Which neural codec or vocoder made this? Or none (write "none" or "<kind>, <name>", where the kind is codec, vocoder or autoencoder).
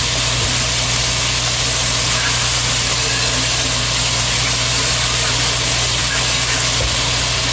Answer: none